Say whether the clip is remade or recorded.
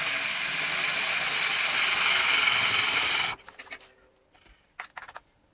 recorded